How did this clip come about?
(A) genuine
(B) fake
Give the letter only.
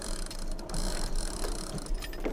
B